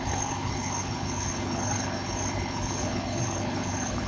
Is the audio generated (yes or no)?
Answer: yes